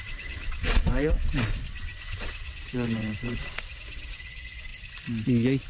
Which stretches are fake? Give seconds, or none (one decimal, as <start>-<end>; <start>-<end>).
0.0-4.7